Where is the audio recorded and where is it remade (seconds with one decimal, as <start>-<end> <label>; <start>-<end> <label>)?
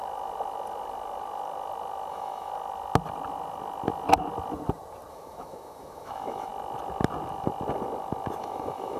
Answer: 0.0-2.1 recorded; 2.1-2.5 remade; 2.5-5.1 recorded; 5.1-6.5 remade; 6.5-8.4 recorded; 8.4-9.0 remade